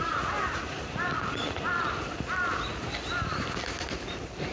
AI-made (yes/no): no